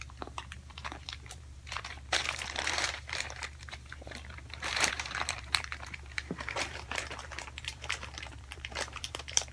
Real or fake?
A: fake